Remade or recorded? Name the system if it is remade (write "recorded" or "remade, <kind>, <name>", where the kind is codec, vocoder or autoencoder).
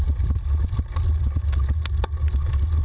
recorded